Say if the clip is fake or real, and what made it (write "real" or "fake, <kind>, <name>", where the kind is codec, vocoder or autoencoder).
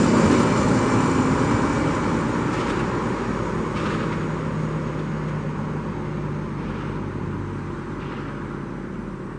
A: real